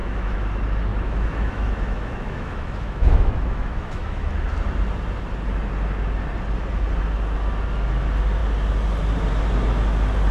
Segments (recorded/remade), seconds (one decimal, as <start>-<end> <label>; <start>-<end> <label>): 0.0-0.5 remade; 0.5-0.9 recorded; 0.9-4.3 remade; 4.3-10.3 recorded